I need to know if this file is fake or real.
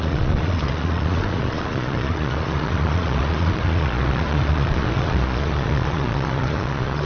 fake